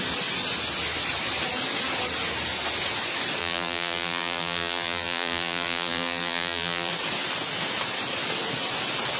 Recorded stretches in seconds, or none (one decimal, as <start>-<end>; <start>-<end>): 0.0-3.4; 6.9-9.2